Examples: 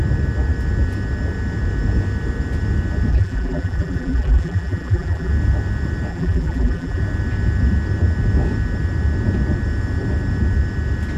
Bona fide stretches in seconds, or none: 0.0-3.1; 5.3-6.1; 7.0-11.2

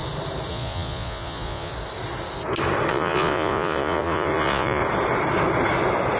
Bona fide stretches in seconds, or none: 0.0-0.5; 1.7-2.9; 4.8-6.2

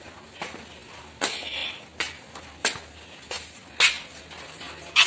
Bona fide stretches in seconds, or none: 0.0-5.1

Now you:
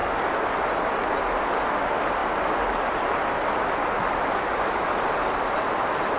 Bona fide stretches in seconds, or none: 0.0-6.2

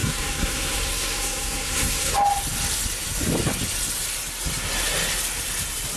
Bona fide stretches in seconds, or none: 2.1-6.0